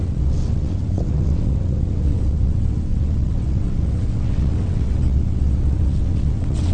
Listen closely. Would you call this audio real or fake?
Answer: fake